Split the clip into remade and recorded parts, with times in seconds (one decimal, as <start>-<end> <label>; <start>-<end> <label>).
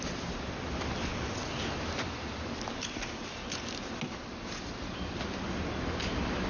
0.0-6.5 recorded